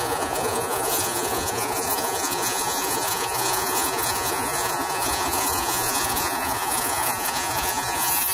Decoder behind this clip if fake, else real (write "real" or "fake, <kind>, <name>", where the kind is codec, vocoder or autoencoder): fake, vocoder, Vocos